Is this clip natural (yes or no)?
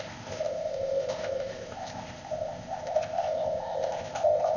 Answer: no